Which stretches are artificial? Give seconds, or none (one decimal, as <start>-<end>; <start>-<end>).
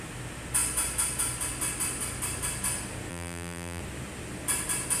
3.1-3.8